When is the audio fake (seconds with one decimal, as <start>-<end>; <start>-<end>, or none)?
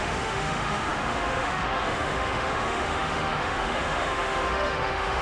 0.0-5.2